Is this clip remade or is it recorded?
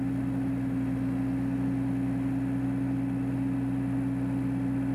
recorded